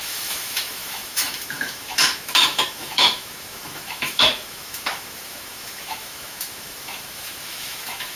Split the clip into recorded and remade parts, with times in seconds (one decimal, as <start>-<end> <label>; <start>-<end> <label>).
0.0-8.2 remade